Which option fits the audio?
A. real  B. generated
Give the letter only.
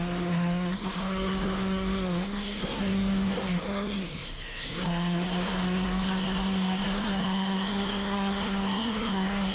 B